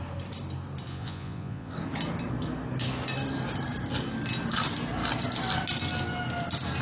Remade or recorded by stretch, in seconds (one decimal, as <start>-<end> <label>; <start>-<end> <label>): 0.0-0.9 recorded; 0.9-1.7 remade; 1.7-6.8 recorded